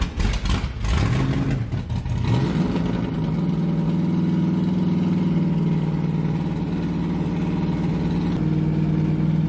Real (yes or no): yes